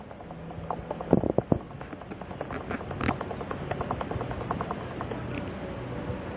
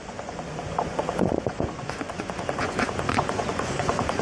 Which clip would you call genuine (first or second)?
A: first